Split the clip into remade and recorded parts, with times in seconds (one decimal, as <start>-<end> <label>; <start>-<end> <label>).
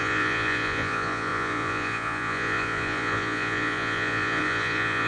0.0-5.1 remade